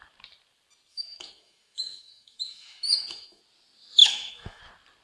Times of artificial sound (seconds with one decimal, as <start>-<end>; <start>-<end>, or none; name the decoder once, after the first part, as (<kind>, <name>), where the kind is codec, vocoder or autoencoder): 0.9-3.4 (autoencoder, DAC-VAE); 4.0-4.6